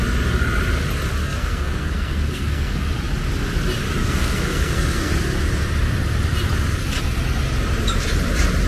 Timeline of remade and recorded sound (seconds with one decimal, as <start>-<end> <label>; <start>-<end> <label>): 0.0-1.2 recorded; 1.2-2.9 remade; 2.9-4.0 recorded; 4.0-5.1 remade; 5.1-8.7 recorded